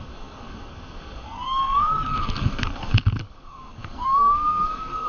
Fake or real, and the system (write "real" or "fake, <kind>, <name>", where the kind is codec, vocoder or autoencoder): fake, codec, SNAC